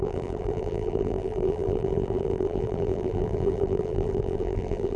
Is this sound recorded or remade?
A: remade